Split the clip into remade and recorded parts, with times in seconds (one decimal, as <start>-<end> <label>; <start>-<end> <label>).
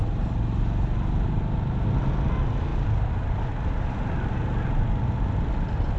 0.0-6.0 recorded